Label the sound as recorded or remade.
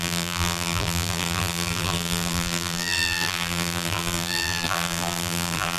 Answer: remade